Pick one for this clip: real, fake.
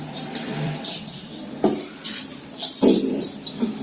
fake